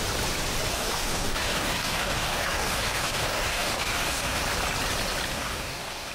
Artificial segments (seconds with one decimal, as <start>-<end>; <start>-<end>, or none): 0.7-4.4; 5.3-6.1